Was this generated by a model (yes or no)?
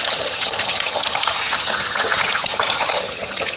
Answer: yes